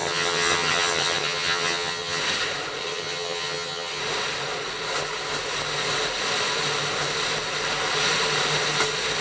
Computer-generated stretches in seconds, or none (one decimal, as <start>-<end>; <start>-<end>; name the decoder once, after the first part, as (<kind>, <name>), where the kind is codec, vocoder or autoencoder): 0.0-2.2 (vocoder, HiFi-GAN); 2.8-4.0